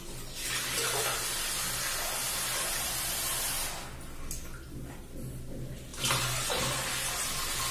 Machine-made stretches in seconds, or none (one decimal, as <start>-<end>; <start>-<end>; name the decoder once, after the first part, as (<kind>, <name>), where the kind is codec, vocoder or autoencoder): none